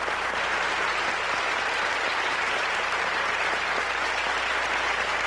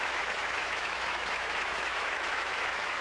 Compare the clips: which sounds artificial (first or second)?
second